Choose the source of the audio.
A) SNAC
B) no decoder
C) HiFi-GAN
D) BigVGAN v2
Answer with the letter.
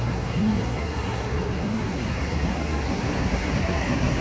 A